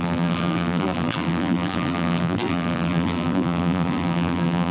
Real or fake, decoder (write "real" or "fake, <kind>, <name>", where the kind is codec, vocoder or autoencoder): fake, vocoder, BigVGAN v2